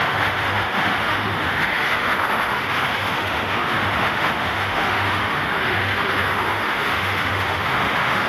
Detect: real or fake fake